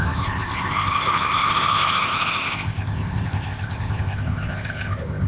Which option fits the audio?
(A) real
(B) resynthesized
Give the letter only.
B